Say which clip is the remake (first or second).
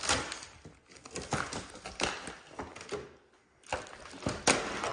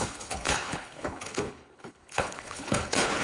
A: second